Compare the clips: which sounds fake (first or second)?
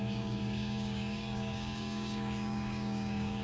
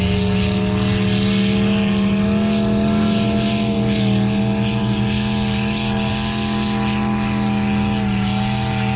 first